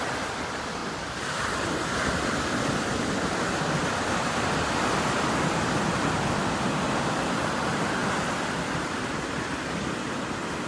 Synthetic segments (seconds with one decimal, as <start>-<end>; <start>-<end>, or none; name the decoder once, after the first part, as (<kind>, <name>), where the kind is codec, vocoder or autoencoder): none